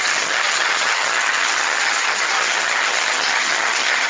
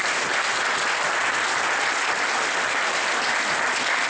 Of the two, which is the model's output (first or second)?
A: first